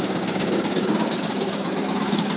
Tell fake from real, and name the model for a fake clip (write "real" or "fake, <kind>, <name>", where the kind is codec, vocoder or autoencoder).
fake, codec, DAC